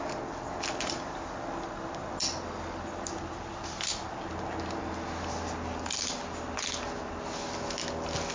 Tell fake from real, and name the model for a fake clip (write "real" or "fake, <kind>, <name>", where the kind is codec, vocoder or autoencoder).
real